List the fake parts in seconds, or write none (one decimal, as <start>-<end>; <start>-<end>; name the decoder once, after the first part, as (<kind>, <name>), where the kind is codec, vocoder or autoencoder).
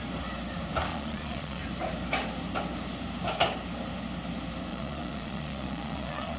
0.9-1.6 (vocoder, Vocos); 4.7-6.4